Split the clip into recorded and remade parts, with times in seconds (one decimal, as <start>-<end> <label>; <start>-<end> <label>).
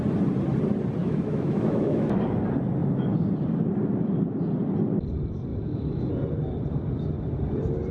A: 0.0-1.0 recorded; 1.0-2.2 remade; 2.2-5.5 recorded; 5.5-6.1 remade; 6.1-7.9 recorded